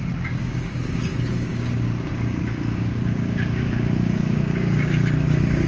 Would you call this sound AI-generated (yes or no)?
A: yes